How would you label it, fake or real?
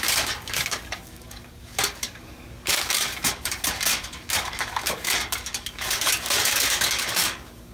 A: fake